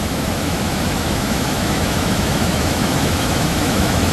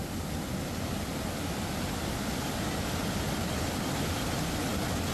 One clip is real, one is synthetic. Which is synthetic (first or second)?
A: first